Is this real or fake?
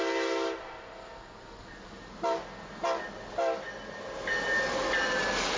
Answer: real